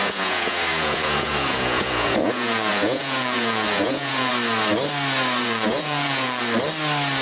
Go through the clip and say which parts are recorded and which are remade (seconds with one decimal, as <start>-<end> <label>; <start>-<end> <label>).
0.0-4.3 remade; 4.3-5.4 recorded; 5.4-6.4 remade; 6.4-7.2 recorded